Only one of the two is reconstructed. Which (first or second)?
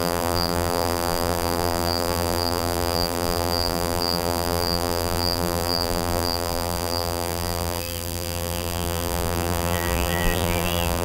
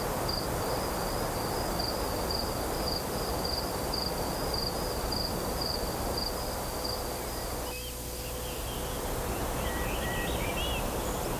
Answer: first